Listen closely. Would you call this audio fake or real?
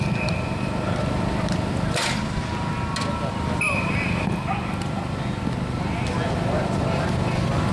real